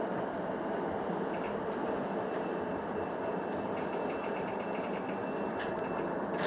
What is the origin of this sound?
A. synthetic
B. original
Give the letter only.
B